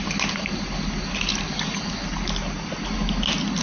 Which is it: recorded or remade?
recorded